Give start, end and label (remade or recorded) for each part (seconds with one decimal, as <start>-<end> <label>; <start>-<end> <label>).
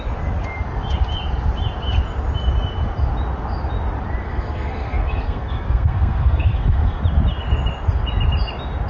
0.0-4.2 recorded; 4.2-7.0 remade; 7.0-8.9 recorded